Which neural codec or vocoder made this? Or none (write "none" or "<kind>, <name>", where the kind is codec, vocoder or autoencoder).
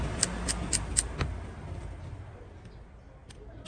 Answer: none